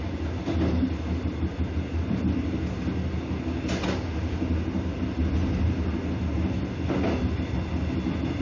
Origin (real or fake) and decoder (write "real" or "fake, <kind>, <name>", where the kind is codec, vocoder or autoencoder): real